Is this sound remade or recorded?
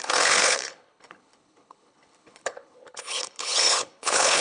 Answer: remade